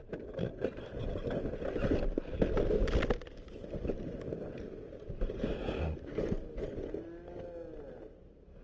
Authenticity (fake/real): real